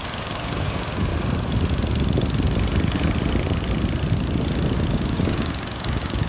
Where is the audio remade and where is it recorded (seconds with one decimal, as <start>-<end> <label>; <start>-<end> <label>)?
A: 0.0-1.1 remade; 1.1-4.9 recorded; 4.9-6.3 remade